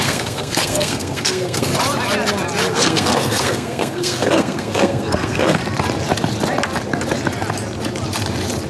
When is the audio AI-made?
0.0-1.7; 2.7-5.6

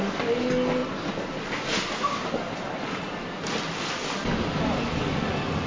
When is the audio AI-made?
none

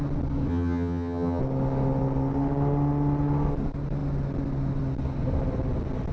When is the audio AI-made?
0.5-1.4

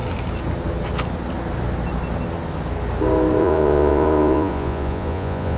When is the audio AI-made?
3.4-5.6